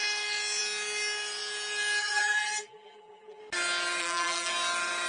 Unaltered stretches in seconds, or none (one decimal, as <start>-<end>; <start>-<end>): 0.0-2.0; 3.4-4.0; 4.5-5.1